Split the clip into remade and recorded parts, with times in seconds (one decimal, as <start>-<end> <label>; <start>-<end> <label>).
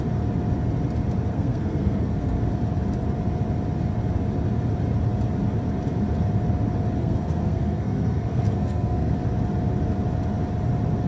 0.0-1.3 recorded; 1.3-2.4 remade; 2.4-7.0 recorded; 7.0-9.1 remade; 9.1-11.1 recorded